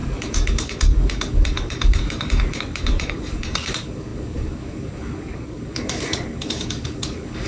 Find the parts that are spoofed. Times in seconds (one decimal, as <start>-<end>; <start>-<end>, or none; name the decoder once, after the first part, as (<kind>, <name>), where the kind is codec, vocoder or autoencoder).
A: 0.0-7.5 (codec, DAC)